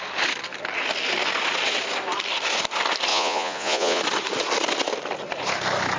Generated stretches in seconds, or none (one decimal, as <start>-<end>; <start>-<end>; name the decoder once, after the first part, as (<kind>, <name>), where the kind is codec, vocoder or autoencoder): 3.1-4.0 (vocoder, Vocos)